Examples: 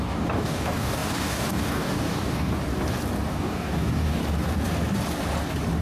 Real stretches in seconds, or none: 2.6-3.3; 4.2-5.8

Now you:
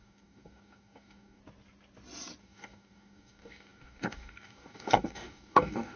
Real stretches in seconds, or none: 1.4-2.4